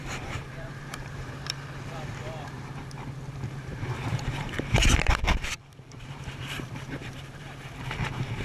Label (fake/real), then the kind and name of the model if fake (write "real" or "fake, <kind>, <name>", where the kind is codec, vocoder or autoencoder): fake, vocoder, BigVGAN v2